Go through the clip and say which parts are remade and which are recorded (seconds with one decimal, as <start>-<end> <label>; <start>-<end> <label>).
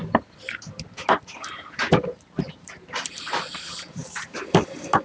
0.0-5.0 recorded